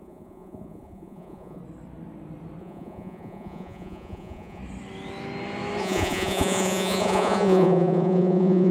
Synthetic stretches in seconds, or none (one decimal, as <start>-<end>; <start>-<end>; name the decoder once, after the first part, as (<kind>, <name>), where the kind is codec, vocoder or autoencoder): 0.0-1.6 (vocoder, Vocos); 2.6-4.6; 5.8-8.7